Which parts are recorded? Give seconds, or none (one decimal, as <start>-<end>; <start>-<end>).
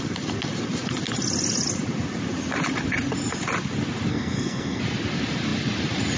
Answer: 0.0-4.1; 4.8-6.2